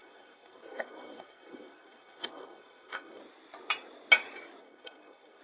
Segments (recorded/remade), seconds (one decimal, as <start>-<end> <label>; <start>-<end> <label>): 0.0-3.2 remade; 3.2-4.6 recorded; 4.6-5.4 remade